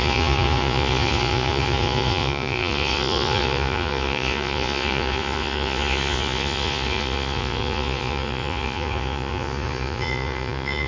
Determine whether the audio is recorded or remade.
remade